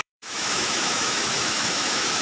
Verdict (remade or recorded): remade